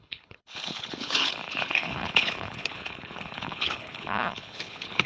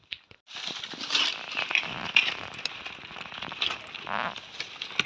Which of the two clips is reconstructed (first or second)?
first